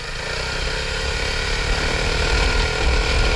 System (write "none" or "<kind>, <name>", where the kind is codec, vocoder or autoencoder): none